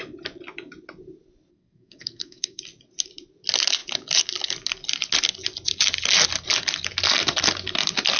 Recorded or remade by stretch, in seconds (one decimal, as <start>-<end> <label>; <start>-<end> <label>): 0.0-1.5 recorded; 1.5-2.6 remade; 2.6-8.2 recorded